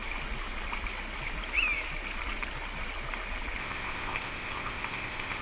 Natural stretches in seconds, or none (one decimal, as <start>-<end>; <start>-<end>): 0.0-3.6